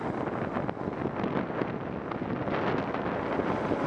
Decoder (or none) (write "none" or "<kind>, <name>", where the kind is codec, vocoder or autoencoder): none